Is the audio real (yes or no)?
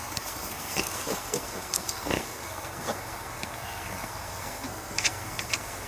no